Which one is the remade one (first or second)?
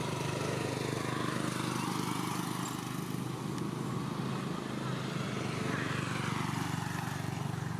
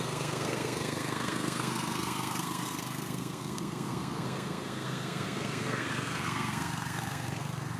second